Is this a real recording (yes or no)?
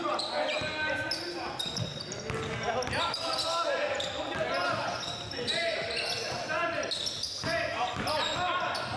yes